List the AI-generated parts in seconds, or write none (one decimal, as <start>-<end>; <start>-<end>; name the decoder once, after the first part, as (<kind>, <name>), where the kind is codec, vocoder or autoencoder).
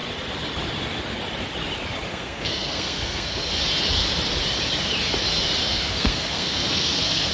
2.1-3.5 (codec, SNAC); 5.7-7.3